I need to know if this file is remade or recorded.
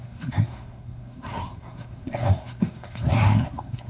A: remade